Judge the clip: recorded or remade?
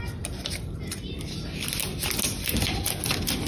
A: recorded